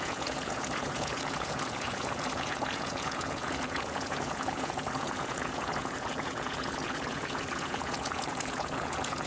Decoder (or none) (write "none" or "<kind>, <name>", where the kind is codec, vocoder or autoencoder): vocoder, Vocos